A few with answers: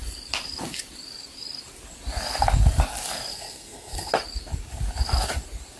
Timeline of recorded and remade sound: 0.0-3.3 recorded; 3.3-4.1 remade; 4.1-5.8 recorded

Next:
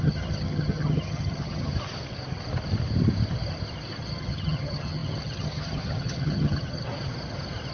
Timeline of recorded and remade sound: 0.0-1.7 remade; 1.7-4.0 recorded; 4.0-6.9 remade; 6.9-7.7 recorded

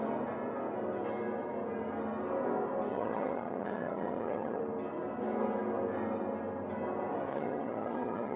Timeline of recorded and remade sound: 0.0-2.9 recorded; 2.9-4.6 remade; 4.6-7.3 recorded; 7.3-8.4 remade

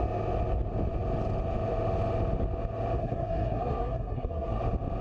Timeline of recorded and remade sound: 0.0-3.0 recorded; 3.0-4.6 remade; 4.6-5.0 recorded

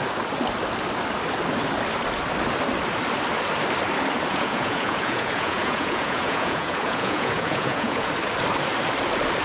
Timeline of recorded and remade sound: 0.0-4.3 recorded; 4.3-8.1 remade; 8.1-9.4 recorded

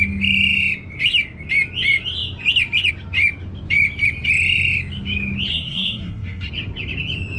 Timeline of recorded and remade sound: 0.0-5.5 recorded; 5.5-6.5 remade; 6.5-7.4 recorded